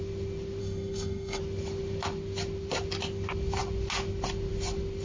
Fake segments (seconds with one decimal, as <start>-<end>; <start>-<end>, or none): 0.6-1.4